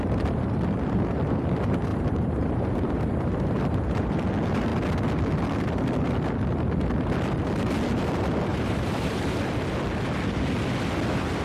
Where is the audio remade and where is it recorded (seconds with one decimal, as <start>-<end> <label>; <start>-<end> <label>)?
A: 0.0-1.9 recorded; 1.9-4.2 remade; 4.2-8.5 recorded; 8.5-9.4 remade; 9.4-11.4 recorded